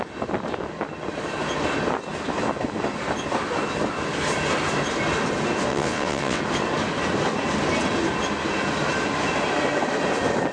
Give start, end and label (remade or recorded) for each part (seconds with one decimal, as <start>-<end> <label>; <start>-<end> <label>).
0.0-5.7 recorded; 5.7-6.4 remade; 6.4-10.5 recorded